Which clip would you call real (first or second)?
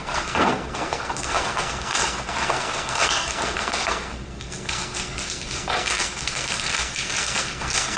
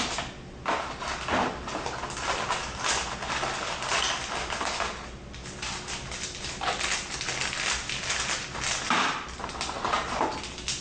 second